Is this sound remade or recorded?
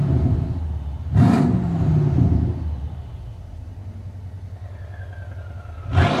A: recorded